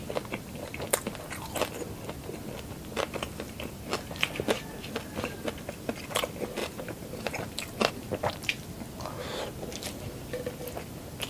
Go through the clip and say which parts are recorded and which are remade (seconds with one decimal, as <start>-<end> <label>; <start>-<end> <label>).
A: 0.0-6.6 recorded; 6.6-7.9 remade; 7.9-11.3 recorded

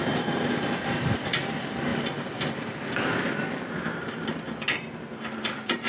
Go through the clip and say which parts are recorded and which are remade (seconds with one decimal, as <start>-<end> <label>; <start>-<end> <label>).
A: 0.0-1.9 remade; 1.9-5.4 recorded; 5.4-5.9 remade

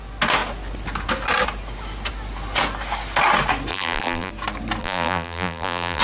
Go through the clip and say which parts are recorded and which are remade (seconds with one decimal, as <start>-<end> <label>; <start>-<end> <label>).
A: 0.0-3.7 recorded; 3.7-4.3 remade; 4.3-4.8 recorded; 4.8-6.0 remade

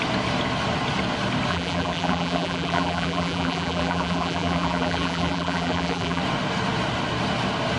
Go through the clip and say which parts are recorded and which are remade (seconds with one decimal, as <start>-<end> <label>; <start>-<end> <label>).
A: 0.0-1.5 recorded; 1.5-6.2 remade; 6.2-7.8 recorded

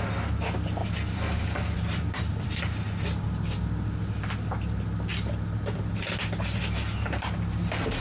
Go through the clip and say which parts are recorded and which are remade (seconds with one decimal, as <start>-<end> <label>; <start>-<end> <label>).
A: 0.0-0.8 recorded; 0.8-2.5 remade; 2.5-8.0 recorded

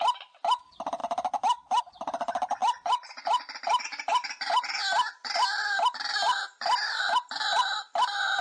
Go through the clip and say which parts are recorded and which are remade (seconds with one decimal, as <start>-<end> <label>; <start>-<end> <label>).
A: 0.0-2.6 recorded; 2.6-3.6 remade; 3.6-8.4 recorded

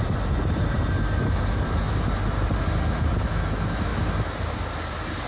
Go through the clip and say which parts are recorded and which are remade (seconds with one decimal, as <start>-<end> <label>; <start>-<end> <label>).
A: 0.0-1.8 remade; 1.8-5.3 recorded